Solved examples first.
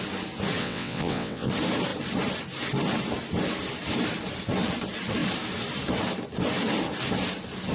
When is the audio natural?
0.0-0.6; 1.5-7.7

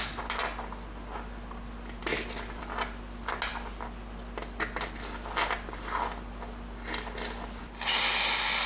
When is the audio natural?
0.0-8.7

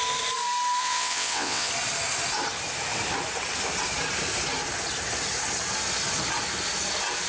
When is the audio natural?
0.0-0.8; 1.7-7.3

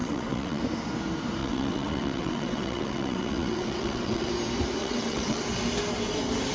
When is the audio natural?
0.6-1.4; 4.3-4.8; 5.4-6.5

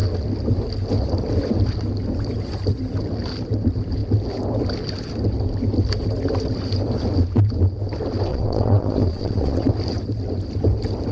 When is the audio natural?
0.0-8.3; 9.7-11.1

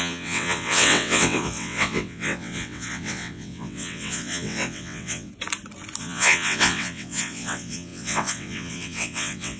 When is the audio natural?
5.3-6.0

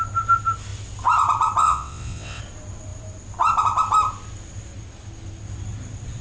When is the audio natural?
0.0-1.6; 2.4-6.2